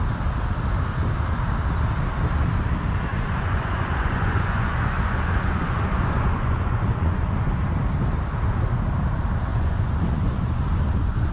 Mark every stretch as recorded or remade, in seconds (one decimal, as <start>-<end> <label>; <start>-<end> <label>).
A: 0.0-3.1 recorded; 3.1-7.5 remade; 7.5-9.5 recorded; 9.5-11.3 remade